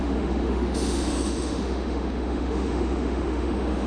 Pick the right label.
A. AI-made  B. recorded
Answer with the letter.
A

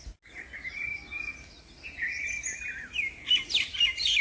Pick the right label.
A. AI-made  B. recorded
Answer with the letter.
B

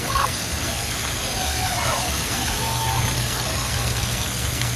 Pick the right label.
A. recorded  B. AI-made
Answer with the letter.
B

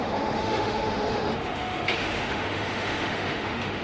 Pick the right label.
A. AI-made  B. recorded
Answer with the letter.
A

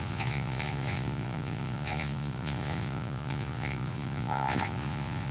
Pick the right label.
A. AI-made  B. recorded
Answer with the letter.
A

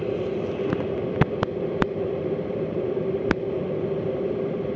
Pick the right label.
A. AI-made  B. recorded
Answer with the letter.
B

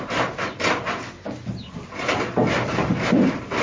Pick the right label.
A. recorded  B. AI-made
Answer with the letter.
A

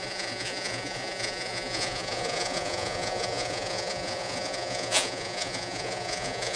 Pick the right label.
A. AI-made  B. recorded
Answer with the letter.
A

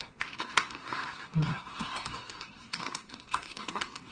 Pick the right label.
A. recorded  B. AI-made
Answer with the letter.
B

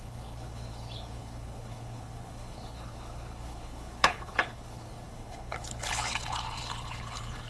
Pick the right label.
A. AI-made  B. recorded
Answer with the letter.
A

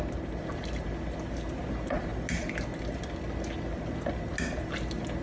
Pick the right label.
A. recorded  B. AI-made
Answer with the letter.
A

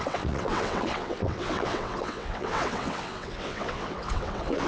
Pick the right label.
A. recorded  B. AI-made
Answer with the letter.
B